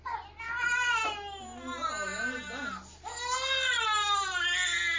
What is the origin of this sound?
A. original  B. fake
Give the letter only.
A